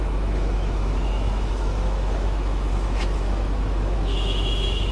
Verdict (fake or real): fake